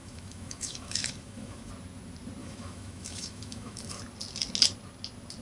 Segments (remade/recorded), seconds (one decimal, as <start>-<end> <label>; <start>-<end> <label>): 0.0-1.7 remade; 1.7-2.4 recorded; 2.4-4.0 remade; 4.0-5.4 recorded